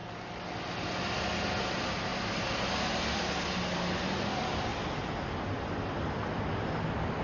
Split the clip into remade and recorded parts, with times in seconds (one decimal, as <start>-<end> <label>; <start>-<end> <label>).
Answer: 0.0-7.2 recorded